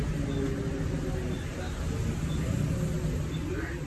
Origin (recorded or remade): recorded